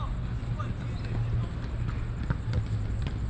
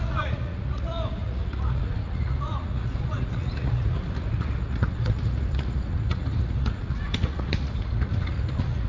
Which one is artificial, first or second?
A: second